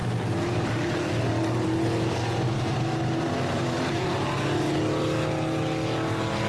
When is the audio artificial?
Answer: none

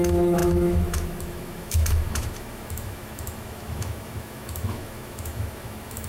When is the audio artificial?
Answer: 0.0-6.1 (autoencoder, DAC-VAE)

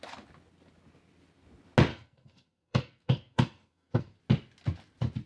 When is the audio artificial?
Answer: 1.9-4.2 (codec, SNAC)

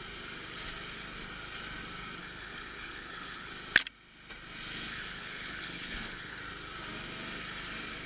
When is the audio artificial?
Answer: 2.2-3.5 (codec, HILCodec); 4.9-6.4